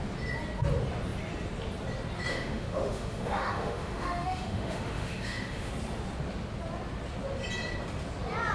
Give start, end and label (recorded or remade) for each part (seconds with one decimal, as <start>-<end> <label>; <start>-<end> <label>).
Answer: 0.0-2.3 recorded; 2.3-5.7 remade; 5.7-8.5 recorded